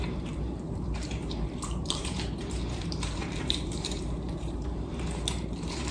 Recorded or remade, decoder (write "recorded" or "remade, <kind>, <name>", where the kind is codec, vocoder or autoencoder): remade, vocoder, BigVGAN v2